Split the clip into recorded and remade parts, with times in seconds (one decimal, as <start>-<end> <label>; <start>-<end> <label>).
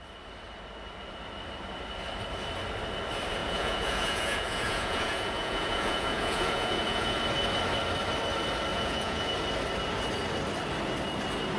0.0-3.4 recorded; 3.4-7.2 remade; 7.2-8.7 recorded; 8.7-9.3 remade; 9.3-11.6 recorded